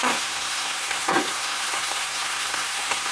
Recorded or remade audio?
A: remade